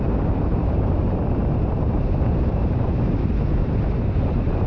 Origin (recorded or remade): remade